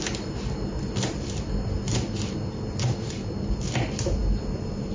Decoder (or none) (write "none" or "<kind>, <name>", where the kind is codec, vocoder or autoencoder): none